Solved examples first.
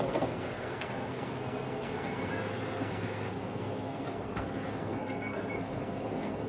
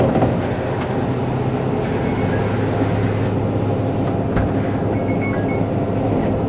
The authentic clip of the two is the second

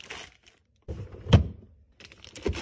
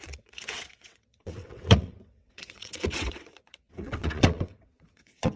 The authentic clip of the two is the first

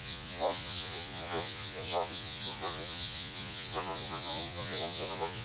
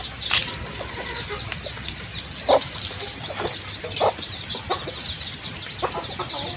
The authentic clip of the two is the second